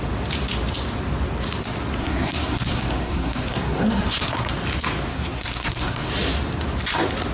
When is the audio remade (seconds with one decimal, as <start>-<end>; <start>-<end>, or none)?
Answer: 2.0-4.5; 5.1-6.1